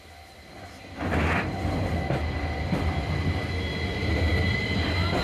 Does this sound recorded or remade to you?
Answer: recorded